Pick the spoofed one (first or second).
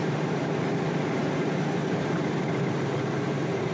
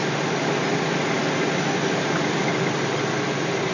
first